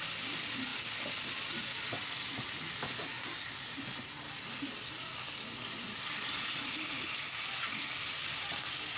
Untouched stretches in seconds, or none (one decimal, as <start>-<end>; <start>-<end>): 0.0-9.0